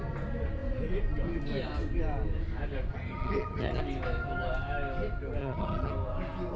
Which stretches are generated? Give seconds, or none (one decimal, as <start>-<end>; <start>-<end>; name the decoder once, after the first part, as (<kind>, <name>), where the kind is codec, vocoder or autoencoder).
2.9-3.8 (vocoder, HiFi-GAN); 5.4-5.9